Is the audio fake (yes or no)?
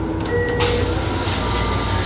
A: no